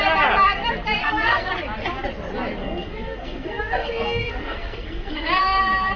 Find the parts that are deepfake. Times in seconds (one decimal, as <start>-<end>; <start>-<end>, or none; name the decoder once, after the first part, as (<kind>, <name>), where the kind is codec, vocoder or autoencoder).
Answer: 1.0-1.5 (codec, SNAC); 2.6-5.6